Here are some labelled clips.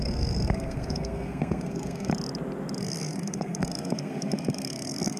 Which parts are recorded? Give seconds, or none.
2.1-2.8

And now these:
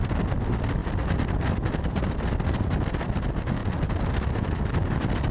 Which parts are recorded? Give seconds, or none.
0.0-5.3

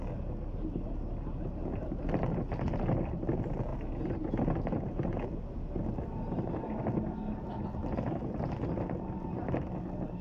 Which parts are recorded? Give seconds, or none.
0.0-10.2

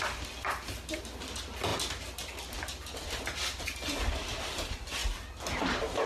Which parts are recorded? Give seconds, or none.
0.0-6.1

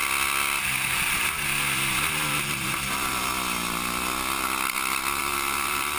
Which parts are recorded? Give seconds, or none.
0.0-2.3; 3.3-5.2

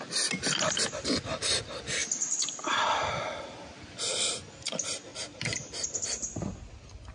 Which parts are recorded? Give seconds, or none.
0.0-5.1; 6.1-7.1

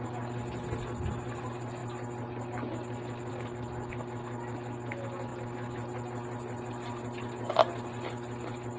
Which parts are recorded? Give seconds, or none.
0.0-8.8

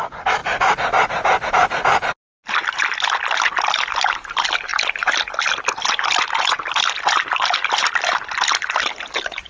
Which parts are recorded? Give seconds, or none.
0.0-9.5